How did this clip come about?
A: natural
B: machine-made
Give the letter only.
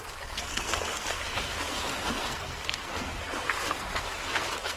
B